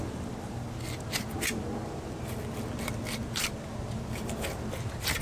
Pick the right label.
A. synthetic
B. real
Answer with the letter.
B